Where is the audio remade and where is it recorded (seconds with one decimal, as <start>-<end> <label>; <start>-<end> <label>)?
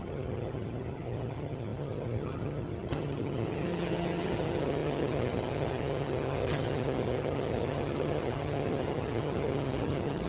0.0-10.3 remade